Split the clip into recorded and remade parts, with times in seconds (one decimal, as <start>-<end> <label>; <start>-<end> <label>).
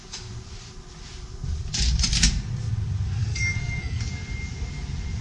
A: 0.0-3.2 recorded; 3.2-4.0 remade; 4.0-5.2 recorded